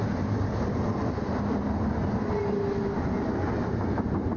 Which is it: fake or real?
real